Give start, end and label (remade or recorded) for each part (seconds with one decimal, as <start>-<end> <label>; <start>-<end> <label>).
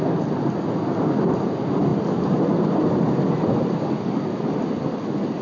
0.0-5.4 recorded